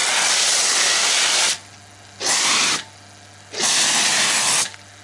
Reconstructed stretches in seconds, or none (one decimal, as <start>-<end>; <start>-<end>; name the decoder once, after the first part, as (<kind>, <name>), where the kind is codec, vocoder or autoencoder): none